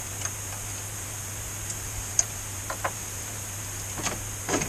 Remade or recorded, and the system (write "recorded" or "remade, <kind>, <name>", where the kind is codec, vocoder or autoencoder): recorded